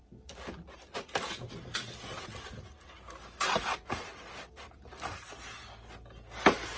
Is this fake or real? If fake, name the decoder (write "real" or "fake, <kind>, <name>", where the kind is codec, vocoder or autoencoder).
real